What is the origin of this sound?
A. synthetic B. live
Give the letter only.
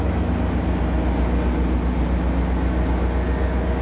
B